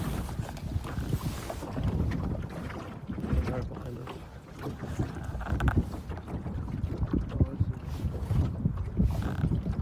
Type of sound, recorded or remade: recorded